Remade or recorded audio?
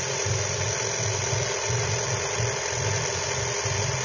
recorded